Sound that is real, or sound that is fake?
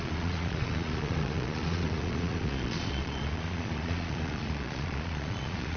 fake